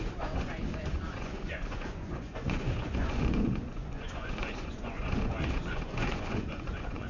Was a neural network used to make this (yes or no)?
yes